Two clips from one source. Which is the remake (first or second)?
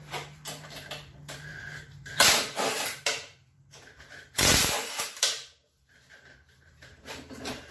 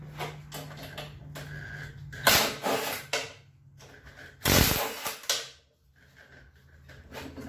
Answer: first